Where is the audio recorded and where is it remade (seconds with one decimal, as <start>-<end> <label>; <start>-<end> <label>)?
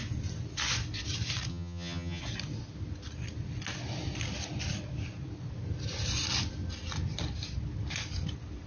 0.0-1.5 recorded; 1.5-2.2 remade; 2.2-8.7 recorded